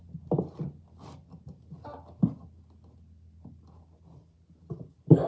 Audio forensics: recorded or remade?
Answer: recorded